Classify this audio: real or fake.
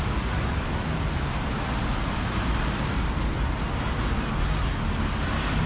real